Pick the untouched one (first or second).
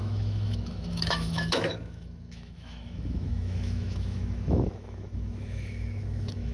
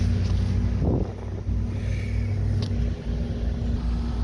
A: second